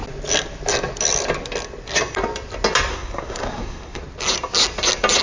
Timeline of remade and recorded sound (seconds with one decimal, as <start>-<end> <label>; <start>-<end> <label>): 0.0-2.9 recorded; 2.9-4.0 remade; 4.0-5.2 recorded